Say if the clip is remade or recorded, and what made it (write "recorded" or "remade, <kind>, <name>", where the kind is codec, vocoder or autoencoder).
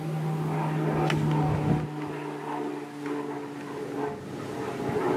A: recorded